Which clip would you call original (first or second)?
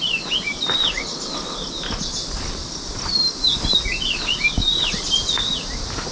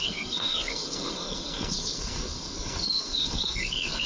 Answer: first